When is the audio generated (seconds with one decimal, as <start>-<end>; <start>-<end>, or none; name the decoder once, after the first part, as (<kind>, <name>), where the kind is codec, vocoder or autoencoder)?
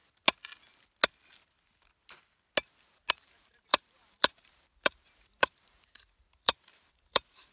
3.1-7.5 (vocoder, BigVGAN v2)